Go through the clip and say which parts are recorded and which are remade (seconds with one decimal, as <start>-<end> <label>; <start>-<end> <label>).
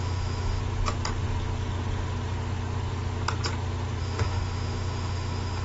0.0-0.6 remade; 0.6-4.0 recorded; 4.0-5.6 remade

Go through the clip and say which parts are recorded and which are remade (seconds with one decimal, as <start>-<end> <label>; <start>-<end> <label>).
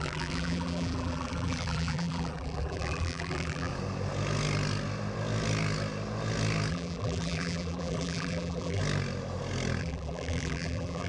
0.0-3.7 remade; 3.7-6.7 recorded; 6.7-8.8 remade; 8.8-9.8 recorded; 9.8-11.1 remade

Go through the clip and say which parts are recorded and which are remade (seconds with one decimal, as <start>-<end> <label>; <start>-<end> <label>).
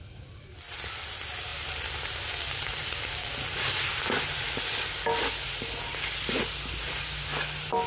0.0-7.9 recorded